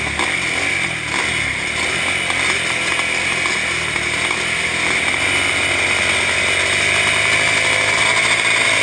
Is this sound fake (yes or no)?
no